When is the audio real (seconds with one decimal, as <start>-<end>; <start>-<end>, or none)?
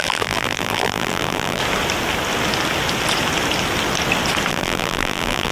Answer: 1.6-4.5